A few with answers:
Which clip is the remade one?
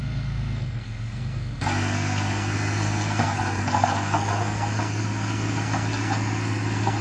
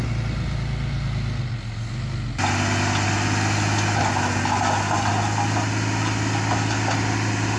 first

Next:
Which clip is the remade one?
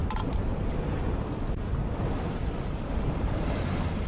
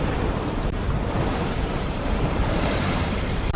second